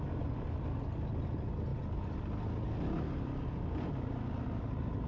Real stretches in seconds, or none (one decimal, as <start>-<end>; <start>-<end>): 0.0-5.1